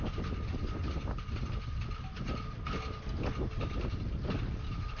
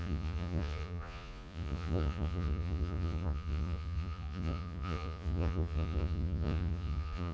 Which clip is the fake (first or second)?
second